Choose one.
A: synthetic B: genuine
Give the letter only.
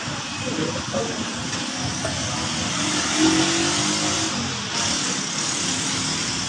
B